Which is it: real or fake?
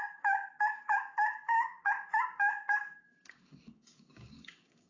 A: fake